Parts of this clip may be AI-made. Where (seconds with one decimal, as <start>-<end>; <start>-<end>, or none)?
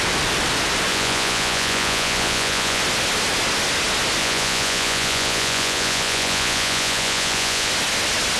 0.9-2.8; 4.2-7.7